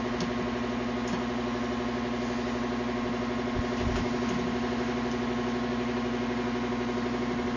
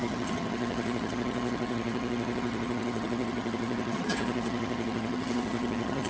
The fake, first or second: second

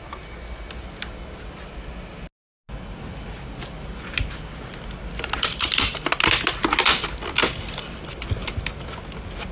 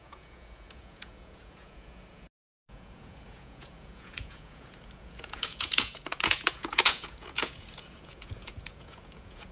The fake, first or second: second